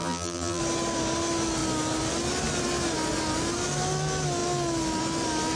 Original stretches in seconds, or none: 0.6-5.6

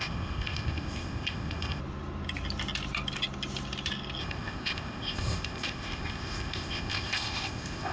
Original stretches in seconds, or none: 1.8-4.2